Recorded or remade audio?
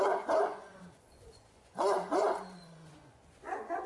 remade